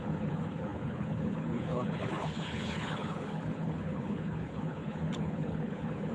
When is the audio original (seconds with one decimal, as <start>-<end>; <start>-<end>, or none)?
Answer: none